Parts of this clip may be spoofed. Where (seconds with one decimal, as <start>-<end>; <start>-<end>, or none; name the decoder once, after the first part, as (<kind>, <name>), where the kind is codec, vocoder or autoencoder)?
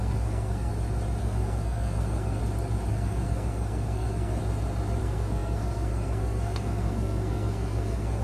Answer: 0.0-0.7 (codec, SNAC); 1.2-2.4; 2.9-4.4; 5.0-8.2